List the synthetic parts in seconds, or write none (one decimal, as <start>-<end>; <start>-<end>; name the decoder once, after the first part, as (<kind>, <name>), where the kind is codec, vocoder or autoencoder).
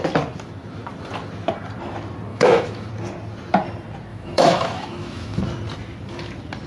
2.3-2.9 (autoencoder, DAC-VAE); 4.1-5.4